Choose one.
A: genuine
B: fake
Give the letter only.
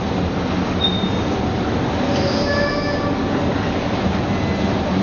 A